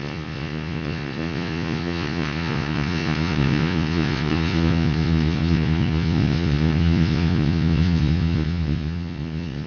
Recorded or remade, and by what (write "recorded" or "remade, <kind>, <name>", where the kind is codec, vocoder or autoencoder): remade, vocoder, Vocos